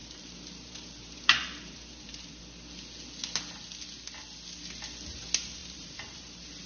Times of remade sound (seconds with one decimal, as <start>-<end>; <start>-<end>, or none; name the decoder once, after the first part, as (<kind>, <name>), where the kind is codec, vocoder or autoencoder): 0.0-2.4 (vocoder, BigVGAN v2); 5.6-6.2